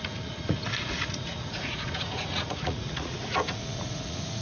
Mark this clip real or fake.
fake